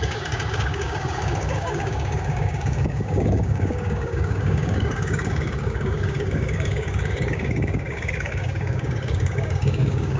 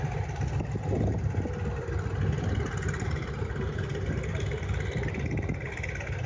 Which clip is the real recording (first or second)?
second